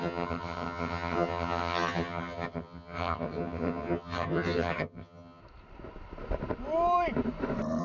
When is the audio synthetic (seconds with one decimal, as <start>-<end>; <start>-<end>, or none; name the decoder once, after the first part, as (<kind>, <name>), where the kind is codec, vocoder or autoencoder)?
0.0-5.4 (vocoder, HiFi-GAN)